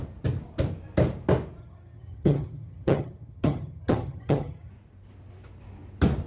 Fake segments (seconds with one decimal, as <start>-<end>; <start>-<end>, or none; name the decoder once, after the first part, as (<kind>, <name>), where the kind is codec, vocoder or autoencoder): 1.6-4.7 (vocoder, HiFi-GAN)